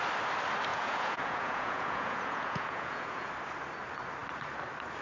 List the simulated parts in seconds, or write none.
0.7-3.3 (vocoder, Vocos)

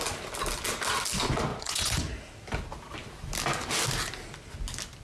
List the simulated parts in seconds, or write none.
1.5-2.0 (vocoder, Vocos)

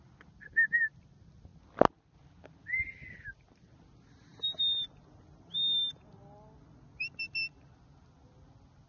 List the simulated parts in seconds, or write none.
none

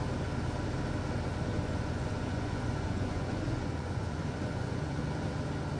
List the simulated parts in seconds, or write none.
1.5-5.0 (vocoder, Vocos)

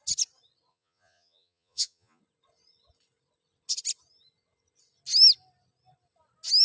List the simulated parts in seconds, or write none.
0.7-2.2 (vocoder, Vocos)

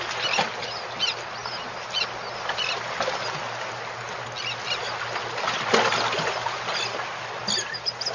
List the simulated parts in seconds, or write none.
none

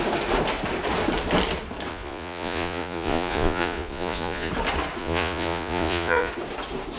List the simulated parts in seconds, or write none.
1.9-4.5 (vocoder, Vocos); 5.0-6.3

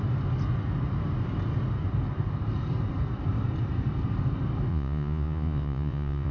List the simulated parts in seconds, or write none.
4.7-6.3 (vocoder, Vocos)